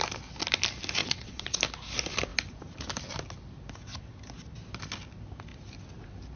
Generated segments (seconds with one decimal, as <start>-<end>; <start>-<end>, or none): 1.0-1.6